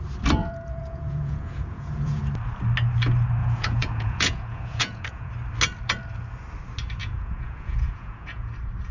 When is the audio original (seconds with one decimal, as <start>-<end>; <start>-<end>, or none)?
0.0-0.4; 2.2-3.4; 5.3-7.0; 8.5-8.9